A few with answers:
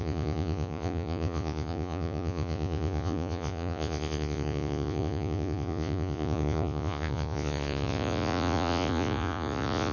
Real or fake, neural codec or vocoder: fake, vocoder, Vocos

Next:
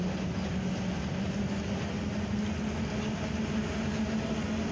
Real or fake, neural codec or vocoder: real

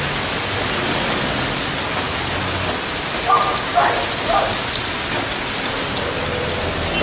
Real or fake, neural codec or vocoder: real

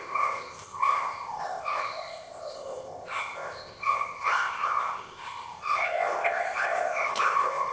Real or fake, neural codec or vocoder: fake, codec, ZipCodec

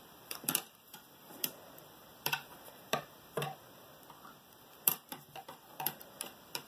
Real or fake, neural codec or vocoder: fake, vocoder, BigVGAN v2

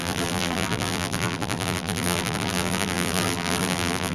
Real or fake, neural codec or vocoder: fake, vocoder, BigVGAN v2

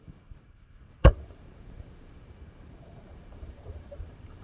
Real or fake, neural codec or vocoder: fake, vocoder, BigVGAN v2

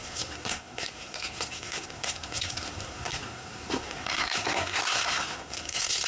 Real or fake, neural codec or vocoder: fake, codec, SNAC